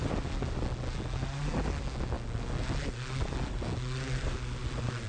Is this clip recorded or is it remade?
recorded